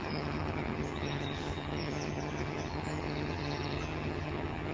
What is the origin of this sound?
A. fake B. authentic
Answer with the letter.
A